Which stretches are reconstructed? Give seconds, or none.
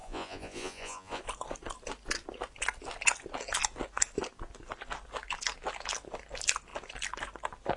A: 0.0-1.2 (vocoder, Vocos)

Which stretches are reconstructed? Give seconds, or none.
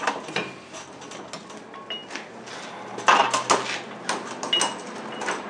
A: none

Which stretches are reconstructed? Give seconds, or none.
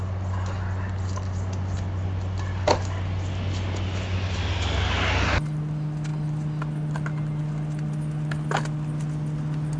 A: none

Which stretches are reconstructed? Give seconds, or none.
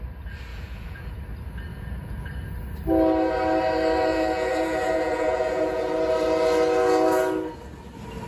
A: 0.5-1.1 (vocoder, Vocos); 1.7-2.3; 4.1-5.9